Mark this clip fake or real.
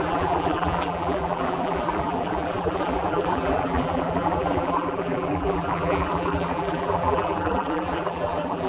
fake